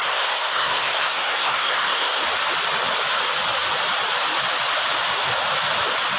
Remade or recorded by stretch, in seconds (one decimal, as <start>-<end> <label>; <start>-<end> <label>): 0.0-2.2 remade; 2.2-6.2 recorded